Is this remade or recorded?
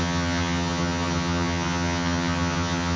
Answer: remade